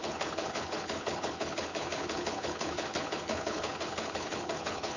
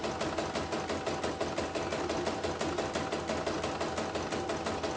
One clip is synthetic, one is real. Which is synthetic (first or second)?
first